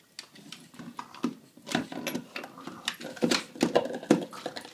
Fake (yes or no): no